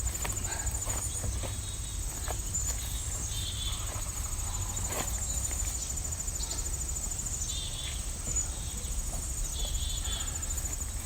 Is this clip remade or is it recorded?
recorded